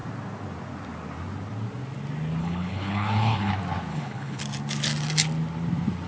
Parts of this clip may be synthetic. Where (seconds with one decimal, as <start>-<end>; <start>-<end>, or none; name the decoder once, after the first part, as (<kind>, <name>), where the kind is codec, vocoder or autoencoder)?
2.4-3.5 (codec, HILCodec); 3.9-4.4